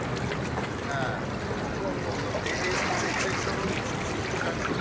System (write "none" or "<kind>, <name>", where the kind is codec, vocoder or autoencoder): none